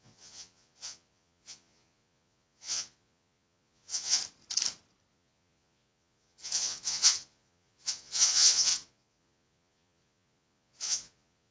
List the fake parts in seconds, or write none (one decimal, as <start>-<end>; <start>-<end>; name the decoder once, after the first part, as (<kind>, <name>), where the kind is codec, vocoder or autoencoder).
0.0-4.2 (vocoder, Vocos); 5.1-11.5